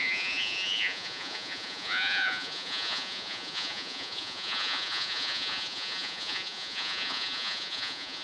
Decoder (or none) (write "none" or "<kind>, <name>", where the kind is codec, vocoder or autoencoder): vocoder, Vocos